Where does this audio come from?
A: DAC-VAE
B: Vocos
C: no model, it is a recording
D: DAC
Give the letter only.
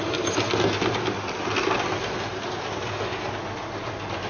C